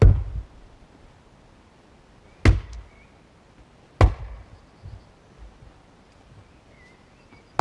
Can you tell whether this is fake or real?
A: real